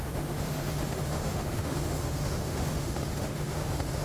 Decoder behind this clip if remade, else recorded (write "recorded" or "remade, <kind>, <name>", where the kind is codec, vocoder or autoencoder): remade, autoencoder, DAC-VAE